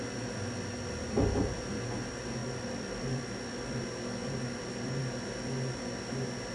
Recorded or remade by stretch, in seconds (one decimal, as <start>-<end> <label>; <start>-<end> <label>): 0.0-2.4 recorded; 2.4-3.8 remade; 3.8-4.2 recorded; 4.2-5.0 remade; 5.0-6.5 recorded